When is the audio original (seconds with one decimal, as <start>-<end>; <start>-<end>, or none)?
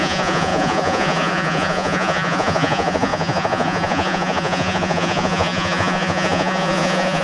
none